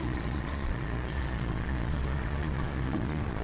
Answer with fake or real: fake